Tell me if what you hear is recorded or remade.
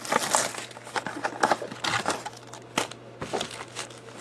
recorded